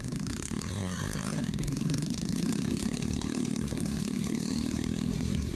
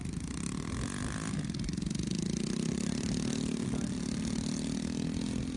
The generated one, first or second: first